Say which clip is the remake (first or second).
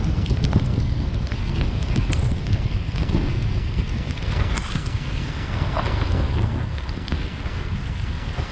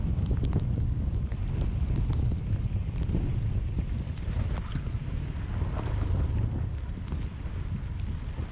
first